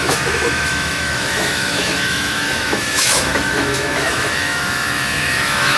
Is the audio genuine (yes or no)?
no